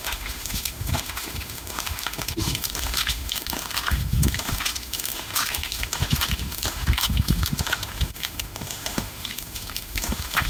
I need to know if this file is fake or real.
fake